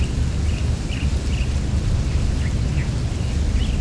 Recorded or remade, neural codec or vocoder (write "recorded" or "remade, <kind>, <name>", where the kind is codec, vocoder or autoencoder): recorded